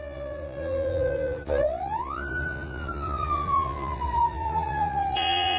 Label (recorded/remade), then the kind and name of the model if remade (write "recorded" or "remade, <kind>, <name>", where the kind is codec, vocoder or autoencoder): remade, vocoder, Vocos